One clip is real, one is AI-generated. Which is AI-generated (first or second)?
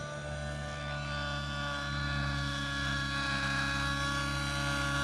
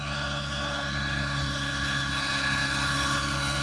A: second